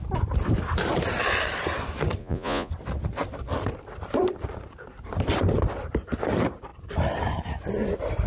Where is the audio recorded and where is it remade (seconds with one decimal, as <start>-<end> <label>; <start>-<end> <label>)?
0.0-2.2 recorded; 2.2-2.7 remade; 2.7-8.3 recorded